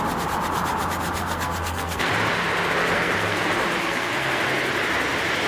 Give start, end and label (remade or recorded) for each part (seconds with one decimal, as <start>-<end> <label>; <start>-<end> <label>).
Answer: 0.0-1.2 recorded; 1.2-2.1 remade; 2.1-2.8 recorded; 2.8-3.4 remade; 3.4-3.8 recorded; 3.8-4.4 remade; 4.4-5.5 recorded